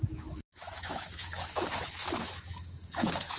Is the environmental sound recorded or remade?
remade